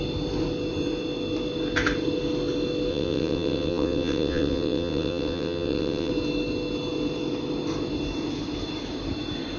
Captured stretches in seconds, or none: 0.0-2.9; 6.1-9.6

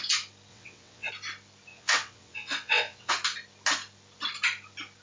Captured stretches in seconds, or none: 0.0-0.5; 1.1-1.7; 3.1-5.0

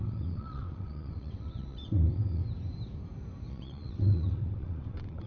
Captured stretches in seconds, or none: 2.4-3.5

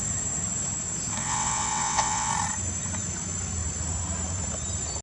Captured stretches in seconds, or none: 0.0-1.2; 2.3-5.0

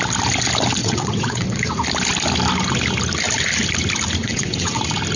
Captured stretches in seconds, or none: 0.0-0.8; 1.7-4.2; 4.8-5.2

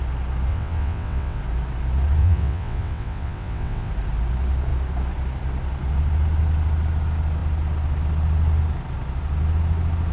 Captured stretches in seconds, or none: 0.0-0.5; 1.4-2.2; 3.9-10.1

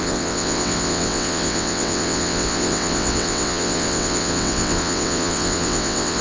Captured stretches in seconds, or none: none

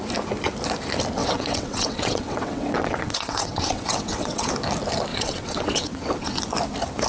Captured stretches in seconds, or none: 0.0-1.2; 4.5-5.1; 6.4-7.1